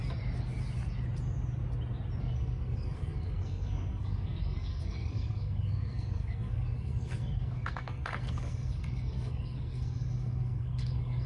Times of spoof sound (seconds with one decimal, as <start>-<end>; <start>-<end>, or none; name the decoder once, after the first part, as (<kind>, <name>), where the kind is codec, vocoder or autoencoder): 2.2-11.3 (codec, SNAC)